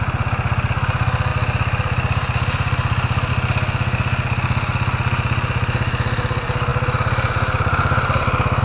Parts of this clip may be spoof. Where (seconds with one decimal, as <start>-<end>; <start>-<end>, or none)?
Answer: none